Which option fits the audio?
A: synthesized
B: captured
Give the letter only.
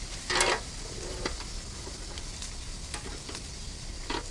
B